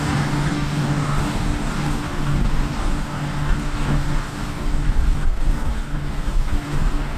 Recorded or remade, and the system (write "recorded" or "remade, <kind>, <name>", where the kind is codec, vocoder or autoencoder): remade, codec, DAC